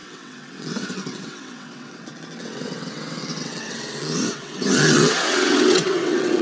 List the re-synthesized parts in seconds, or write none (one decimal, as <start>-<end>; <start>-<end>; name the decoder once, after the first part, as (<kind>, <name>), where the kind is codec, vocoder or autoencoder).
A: 0.0-6.4 (vocoder, WaveNeXt)